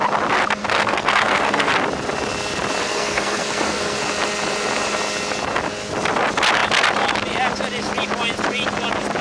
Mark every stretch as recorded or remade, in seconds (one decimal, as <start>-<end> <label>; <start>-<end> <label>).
0.0-0.6 recorded; 0.6-1.7 remade; 1.7-2.8 recorded; 2.8-4.0 remade; 4.0-9.2 recorded

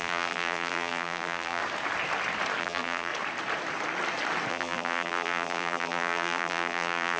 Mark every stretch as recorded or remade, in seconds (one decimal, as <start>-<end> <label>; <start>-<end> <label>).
0.0-1.6 remade; 1.6-2.6 recorded; 2.6-3.1 remade; 3.1-4.5 recorded; 4.5-7.2 remade

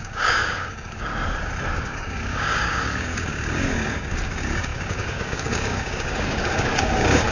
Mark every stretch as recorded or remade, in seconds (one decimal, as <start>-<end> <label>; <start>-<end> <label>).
0.0-1.1 remade; 1.1-1.7 recorded; 1.7-7.3 remade

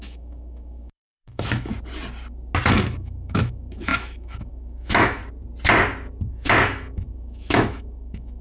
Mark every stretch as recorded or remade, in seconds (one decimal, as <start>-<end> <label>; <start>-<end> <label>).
0.0-1.7 remade; 1.7-2.7 recorded; 2.7-5.2 remade; 5.2-6.3 recorded; 6.3-8.4 remade

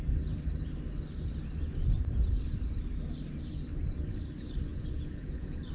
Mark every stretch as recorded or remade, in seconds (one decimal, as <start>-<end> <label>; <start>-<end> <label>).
0.0-4.7 recorded; 4.7-5.7 remade